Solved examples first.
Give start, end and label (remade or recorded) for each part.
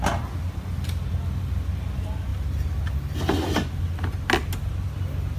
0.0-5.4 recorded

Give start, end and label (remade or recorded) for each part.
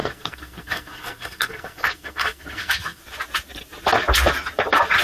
0.0-3.0 remade; 3.0-5.0 recorded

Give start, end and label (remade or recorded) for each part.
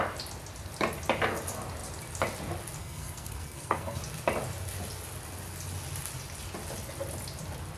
0.0-2.8 recorded; 2.8-4.0 remade; 4.0-7.8 recorded